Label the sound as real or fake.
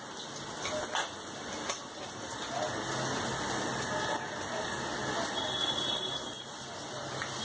real